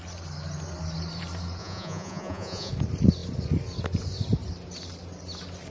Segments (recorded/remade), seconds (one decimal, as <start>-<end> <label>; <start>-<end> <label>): 0.0-1.6 recorded; 1.6-2.7 remade; 2.7-5.7 recorded

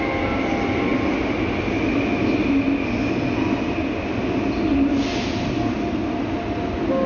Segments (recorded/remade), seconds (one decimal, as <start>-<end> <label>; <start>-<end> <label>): 0.0-7.1 recorded

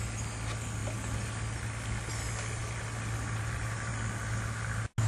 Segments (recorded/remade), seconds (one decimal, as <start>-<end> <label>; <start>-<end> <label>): 0.0-5.1 recorded

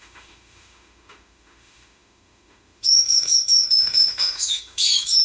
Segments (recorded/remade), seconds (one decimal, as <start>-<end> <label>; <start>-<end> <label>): 0.0-5.2 remade

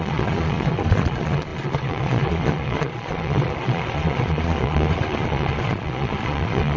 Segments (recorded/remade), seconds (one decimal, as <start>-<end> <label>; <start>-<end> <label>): 0.0-6.8 remade

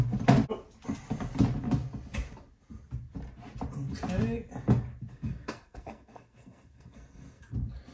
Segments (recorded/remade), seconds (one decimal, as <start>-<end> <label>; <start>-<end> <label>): 0.0-5.1 recorded; 5.1-7.5 remade; 7.5-7.9 recorded

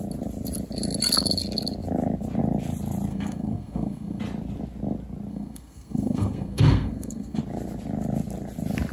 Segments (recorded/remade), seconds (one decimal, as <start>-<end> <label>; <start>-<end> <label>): 0.0-3.1 recorded; 3.1-4.2 remade; 4.2-5.3 recorded; 5.3-7.4 remade; 7.4-8.9 recorded